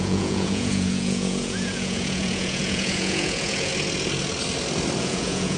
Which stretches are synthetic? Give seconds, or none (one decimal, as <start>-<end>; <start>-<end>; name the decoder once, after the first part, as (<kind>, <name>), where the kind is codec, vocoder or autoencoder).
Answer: 0.0-3.7 (vocoder, Vocos); 5.0-5.6